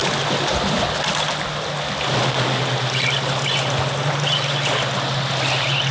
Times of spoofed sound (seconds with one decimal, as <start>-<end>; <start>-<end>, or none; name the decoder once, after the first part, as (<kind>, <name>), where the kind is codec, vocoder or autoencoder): none